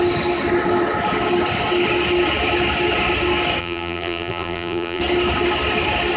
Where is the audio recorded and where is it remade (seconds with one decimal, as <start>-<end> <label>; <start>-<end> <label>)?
0.0-3.6 recorded; 3.6-5.0 remade; 5.0-6.2 recorded